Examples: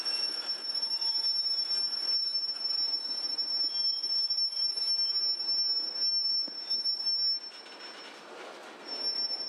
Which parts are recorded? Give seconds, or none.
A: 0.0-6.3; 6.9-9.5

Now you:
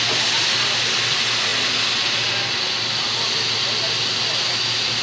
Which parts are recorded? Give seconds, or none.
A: 0.0-5.0

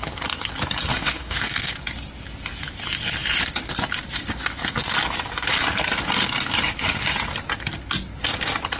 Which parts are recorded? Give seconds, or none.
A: 0.0-0.9; 1.7-8.8

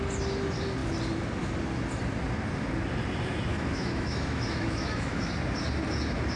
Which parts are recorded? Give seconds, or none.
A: 0.0-3.5; 5.3-6.4

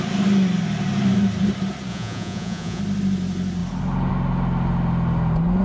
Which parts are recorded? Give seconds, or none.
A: 0.0-1.9; 2.8-5.6

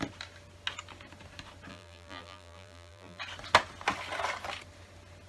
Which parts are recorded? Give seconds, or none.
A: 0.0-1.7; 3.2-5.3

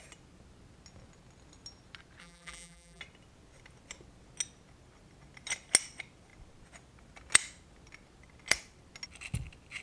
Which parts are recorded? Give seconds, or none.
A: 0.0-2.2; 3.0-9.8